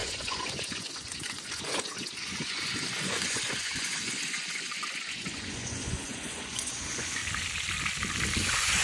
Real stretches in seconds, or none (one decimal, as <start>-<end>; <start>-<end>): 7.2-8.4